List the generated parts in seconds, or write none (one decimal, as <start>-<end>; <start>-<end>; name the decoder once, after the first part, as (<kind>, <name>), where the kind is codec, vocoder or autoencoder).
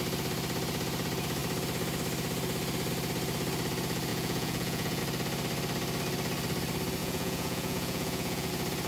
4.1-5.0 (vocoder, Vocos); 7.0-8.5